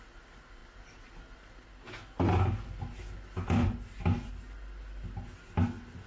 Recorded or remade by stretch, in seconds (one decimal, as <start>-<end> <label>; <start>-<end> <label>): 0.0-6.1 recorded